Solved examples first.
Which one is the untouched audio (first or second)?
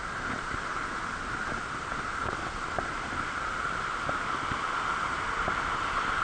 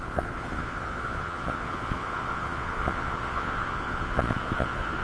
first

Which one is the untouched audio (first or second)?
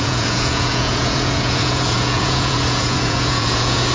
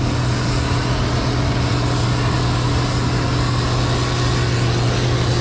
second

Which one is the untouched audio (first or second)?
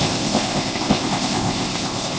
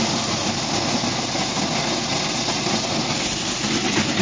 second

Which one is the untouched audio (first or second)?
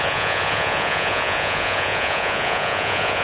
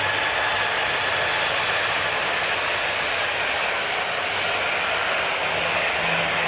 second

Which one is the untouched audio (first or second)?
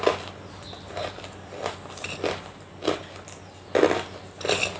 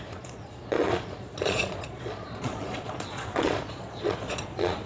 first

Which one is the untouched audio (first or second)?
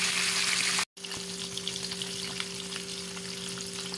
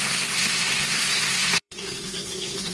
first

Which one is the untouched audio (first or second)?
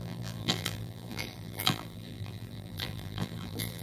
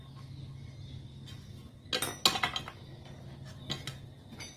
second